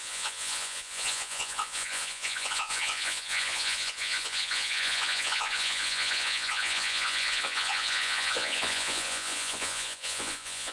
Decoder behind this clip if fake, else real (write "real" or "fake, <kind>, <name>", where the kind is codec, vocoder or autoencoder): fake, vocoder, Vocos